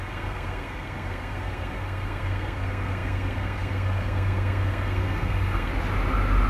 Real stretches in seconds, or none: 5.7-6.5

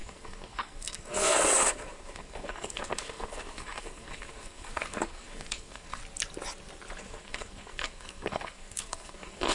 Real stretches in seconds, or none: 6.0-7.0